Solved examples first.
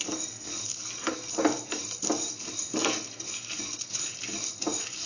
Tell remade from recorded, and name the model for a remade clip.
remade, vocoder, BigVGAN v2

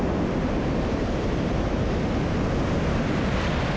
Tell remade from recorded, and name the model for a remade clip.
recorded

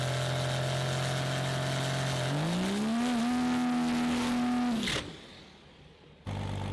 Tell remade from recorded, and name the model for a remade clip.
recorded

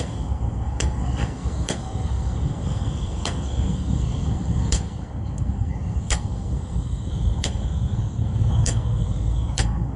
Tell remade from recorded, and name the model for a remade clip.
remade, codec, SNAC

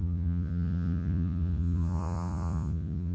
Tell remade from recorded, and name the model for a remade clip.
remade, vocoder, Vocos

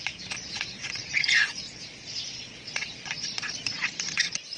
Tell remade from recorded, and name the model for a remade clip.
remade, vocoder, Vocos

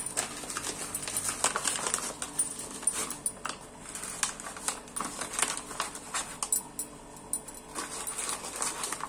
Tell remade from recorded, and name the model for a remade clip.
recorded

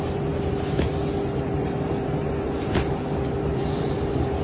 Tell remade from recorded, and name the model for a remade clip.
recorded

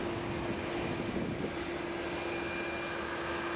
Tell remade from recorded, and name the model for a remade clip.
recorded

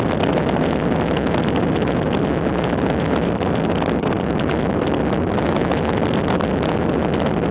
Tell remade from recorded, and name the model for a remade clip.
recorded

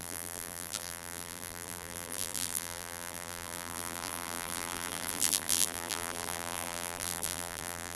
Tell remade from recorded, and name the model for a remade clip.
remade, vocoder, BigVGAN v2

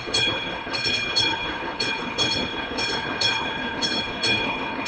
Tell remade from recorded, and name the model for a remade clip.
remade, codec, HILCodec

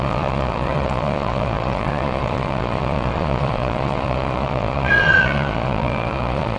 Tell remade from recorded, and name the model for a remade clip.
remade, vocoder, Vocos